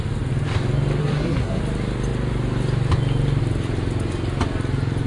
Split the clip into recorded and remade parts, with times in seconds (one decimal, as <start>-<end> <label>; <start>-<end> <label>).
0.0-1.0 recorded; 1.0-1.6 remade; 1.6-5.1 recorded